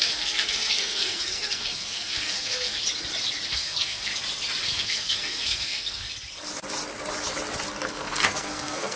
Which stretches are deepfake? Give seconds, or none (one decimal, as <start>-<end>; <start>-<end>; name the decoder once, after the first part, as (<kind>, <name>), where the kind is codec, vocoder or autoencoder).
0.0-2.8 (codec, SNAC); 3.5-4.1; 4.6-6.0; 7.9-9.0